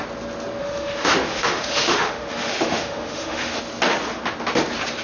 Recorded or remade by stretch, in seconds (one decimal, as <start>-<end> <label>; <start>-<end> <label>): 0.0-0.6 recorded; 0.6-3.6 remade; 3.6-5.0 recorded